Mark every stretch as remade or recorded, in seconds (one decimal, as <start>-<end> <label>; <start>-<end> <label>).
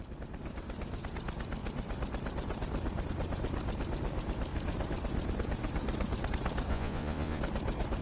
0.0-6.7 recorded; 6.7-7.4 remade; 7.4-8.0 recorded